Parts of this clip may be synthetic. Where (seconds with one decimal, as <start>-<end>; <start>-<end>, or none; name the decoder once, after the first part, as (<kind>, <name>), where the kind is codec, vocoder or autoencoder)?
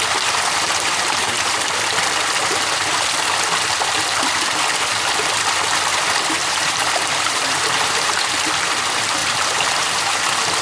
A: 6.4-8.1 (vocoder, BigVGAN v2); 9.2-10.2